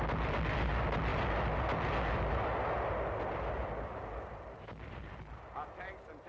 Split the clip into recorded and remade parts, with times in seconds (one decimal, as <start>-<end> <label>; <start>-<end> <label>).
0.0-6.3 recorded